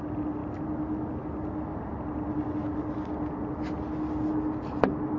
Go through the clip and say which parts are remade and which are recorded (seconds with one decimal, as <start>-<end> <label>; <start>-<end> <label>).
0.0-5.2 recorded